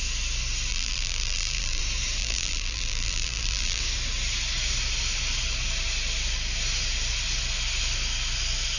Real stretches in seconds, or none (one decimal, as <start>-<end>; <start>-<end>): 0.0-0.7; 1.8-2.2; 3.8-8.8